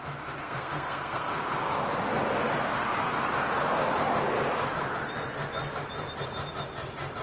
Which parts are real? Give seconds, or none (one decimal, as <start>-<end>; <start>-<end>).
0.0-0.4; 1.3-7.2